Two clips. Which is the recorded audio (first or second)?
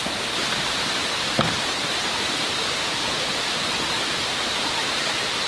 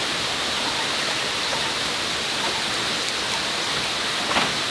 second